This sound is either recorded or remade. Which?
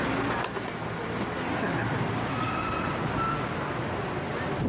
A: recorded